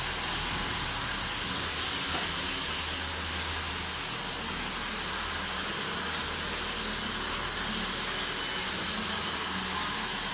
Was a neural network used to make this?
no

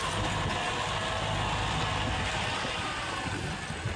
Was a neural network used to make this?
no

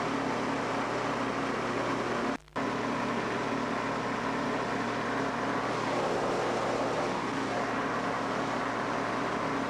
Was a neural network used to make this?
no